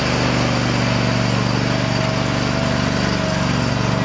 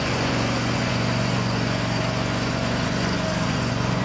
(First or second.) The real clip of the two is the first